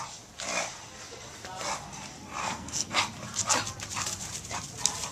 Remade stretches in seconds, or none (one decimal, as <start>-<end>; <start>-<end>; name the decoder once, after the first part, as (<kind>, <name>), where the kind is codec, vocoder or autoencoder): 2.4-3.0 (codec, SNAC)